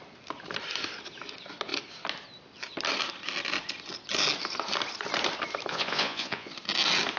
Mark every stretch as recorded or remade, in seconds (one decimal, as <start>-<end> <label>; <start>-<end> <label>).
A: 0.0-5.7 recorded; 5.7-6.5 remade; 6.5-7.2 recorded

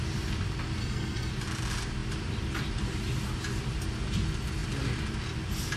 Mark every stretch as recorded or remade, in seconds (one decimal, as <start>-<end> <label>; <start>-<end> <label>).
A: 0.0-0.8 recorded; 0.8-1.3 remade; 1.3-5.8 recorded